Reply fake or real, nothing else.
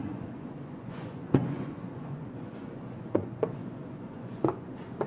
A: fake